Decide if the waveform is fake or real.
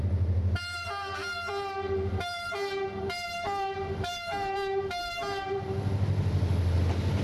real